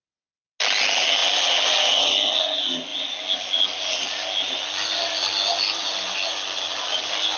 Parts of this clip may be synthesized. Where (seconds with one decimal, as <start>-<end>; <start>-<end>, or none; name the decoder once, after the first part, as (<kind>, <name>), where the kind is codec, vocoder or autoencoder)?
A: none